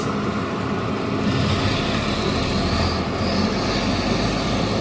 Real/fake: real